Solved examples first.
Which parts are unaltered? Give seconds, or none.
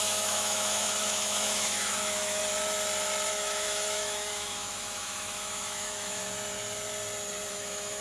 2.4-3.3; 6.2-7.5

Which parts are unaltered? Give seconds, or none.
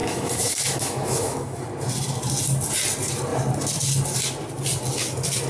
1.6-5.5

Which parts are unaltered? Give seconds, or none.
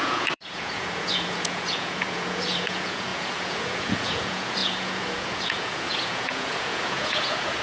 none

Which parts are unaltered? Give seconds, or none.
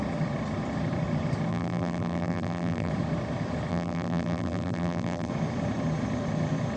0.0-1.5; 2.9-3.7; 5.3-6.8